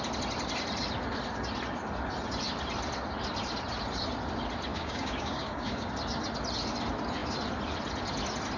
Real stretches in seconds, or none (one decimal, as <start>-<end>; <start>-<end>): 0.0-4.7; 5.9-8.6